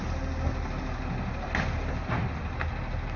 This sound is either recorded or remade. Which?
recorded